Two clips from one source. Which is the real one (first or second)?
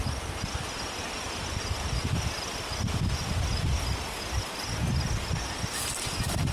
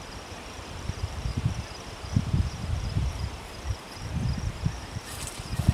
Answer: first